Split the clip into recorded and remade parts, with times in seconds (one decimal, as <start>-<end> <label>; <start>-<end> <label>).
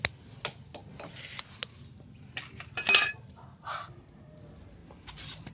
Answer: 0.0-4.8 recorded; 4.8-5.5 remade